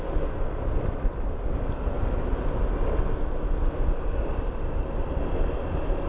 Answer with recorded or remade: recorded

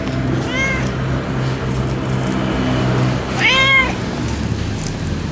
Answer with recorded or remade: recorded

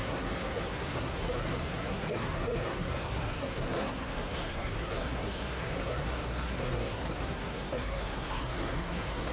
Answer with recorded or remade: remade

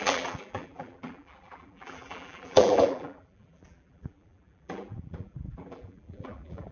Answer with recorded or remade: remade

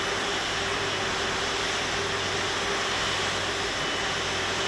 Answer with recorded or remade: recorded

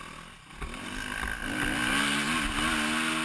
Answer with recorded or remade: recorded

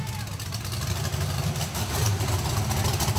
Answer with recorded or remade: recorded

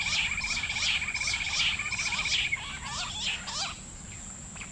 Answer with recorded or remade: recorded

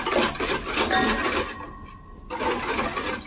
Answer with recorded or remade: recorded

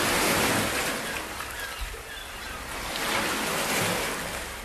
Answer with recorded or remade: recorded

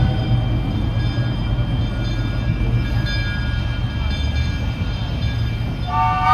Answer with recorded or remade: recorded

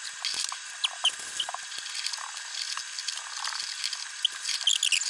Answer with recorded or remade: recorded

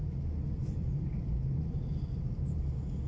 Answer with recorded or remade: recorded